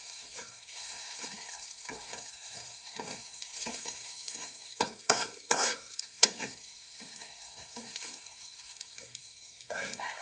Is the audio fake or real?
fake